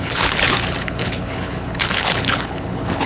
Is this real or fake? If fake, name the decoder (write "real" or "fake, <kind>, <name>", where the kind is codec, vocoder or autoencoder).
fake, codec, HILCodec